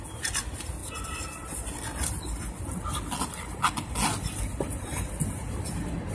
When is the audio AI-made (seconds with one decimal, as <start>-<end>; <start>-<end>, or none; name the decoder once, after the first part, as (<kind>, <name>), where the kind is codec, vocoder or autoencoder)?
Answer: none